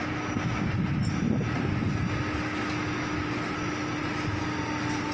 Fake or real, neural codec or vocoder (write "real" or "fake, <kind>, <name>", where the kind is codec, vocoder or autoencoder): real